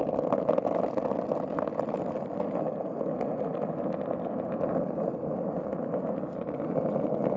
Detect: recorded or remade recorded